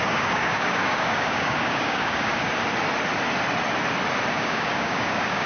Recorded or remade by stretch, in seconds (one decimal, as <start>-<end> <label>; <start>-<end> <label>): 0.0-2.6 remade; 2.6-4.3 recorded; 4.3-5.5 remade